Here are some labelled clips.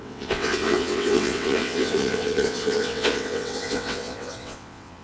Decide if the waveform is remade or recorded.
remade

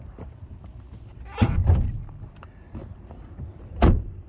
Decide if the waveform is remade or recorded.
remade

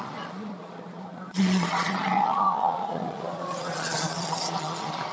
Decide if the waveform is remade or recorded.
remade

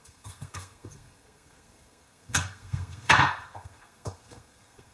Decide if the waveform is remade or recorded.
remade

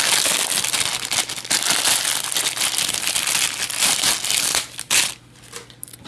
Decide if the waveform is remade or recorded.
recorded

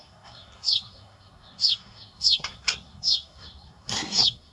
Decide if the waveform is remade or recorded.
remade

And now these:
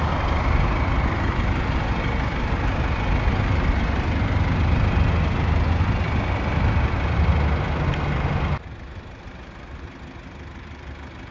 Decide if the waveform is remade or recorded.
recorded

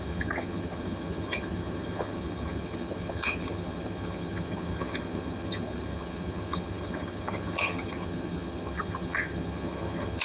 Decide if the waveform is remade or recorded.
remade